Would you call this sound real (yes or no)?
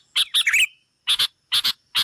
yes